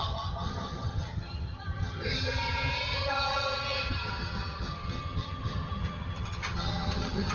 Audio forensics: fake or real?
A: fake